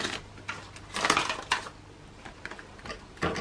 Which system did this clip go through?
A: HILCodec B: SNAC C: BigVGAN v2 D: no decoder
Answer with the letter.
D